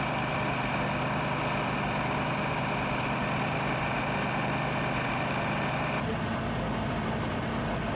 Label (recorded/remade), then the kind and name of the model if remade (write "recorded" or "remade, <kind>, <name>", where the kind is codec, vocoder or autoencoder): recorded